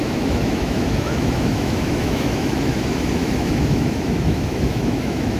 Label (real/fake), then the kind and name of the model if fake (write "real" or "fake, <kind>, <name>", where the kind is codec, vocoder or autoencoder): fake, autoencoder, DAC-VAE